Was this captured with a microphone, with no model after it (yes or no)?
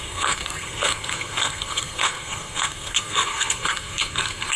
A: no